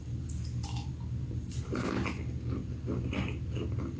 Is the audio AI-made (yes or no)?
no